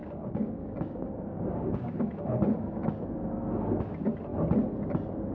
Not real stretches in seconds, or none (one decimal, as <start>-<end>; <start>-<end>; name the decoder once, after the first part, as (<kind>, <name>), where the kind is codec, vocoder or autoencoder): 0.0-3.2 (codec, DAC)